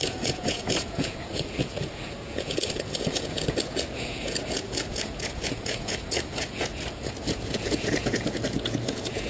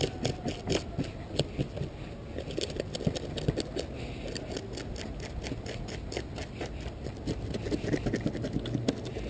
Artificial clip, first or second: first